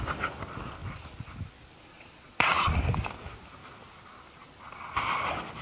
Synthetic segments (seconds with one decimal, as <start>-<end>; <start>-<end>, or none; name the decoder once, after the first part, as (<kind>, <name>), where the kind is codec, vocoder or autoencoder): 1.9-2.8 (vocoder, Vocos)

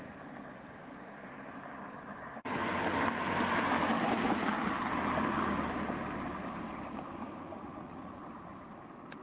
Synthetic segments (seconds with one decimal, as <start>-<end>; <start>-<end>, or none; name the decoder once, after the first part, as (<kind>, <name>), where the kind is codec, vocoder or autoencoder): 7.5-8.2 (vocoder, Vocos)